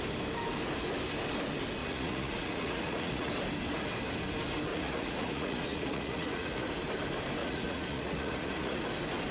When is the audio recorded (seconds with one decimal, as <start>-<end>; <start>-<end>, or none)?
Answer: 0.0-1.8; 3.3-4.7; 6.7-7.4; 8.8-9.3